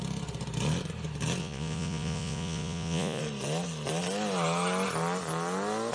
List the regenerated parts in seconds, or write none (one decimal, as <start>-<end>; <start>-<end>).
1.4-3.2